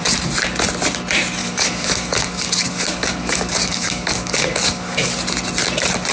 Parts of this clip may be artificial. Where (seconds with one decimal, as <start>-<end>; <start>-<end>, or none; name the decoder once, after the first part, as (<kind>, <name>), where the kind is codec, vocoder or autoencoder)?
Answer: 1.4-5.1 (codec, DAC)